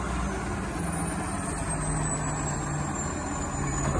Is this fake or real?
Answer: real